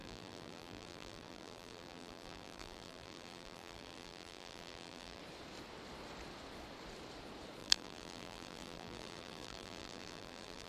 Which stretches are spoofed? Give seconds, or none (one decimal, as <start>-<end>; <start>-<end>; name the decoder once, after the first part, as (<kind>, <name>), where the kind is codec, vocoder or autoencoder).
0.0-5.2 (vocoder, BigVGAN v2); 7.6-10.7